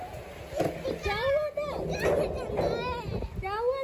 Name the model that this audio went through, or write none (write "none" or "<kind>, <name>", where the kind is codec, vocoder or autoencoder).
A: none